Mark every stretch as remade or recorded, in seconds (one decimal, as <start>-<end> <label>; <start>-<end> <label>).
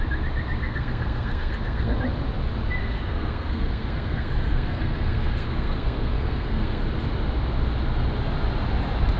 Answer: 0.0-0.6 recorded; 0.6-2.0 remade; 2.0-2.8 recorded; 2.8-6.8 remade; 6.8-9.2 recorded